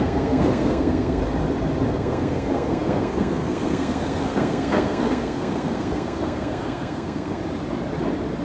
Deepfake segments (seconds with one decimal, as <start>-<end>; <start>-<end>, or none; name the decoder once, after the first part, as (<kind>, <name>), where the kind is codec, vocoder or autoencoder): 0.0-1.2 (codec, SNAC); 1.9-7.4